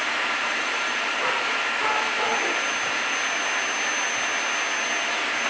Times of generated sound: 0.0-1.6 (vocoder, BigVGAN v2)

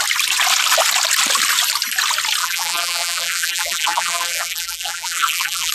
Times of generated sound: 2.4-5.7 (vocoder, BigVGAN v2)

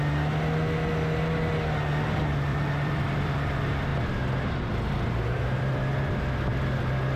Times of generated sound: 2.5-3.3 (vocoder, BigVGAN v2)

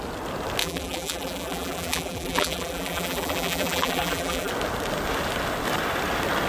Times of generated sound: 0.6-4.5 (vocoder, BigVGAN v2)

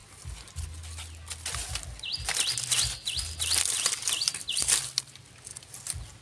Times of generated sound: 0.0-0.5 (vocoder, BigVGAN v2)

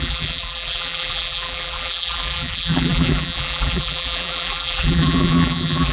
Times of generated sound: 0.0-5.9 (vocoder, BigVGAN v2)